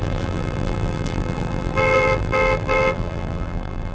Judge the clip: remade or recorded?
remade